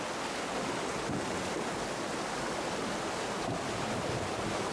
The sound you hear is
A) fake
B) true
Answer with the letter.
B